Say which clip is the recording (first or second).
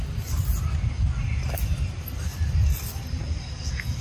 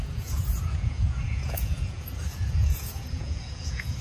first